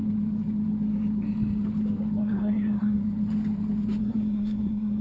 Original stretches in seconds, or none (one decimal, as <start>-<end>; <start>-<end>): 0.0-2.2; 3.0-4.0